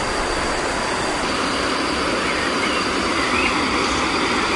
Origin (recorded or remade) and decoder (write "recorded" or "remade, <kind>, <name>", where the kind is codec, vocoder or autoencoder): recorded